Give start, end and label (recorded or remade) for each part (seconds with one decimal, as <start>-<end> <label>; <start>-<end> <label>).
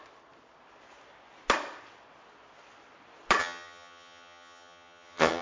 0.0-3.4 recorded; 3.4-5.4 remade